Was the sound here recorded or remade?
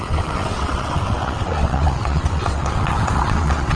remade